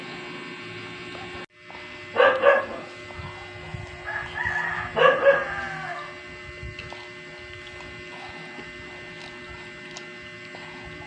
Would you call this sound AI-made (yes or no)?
no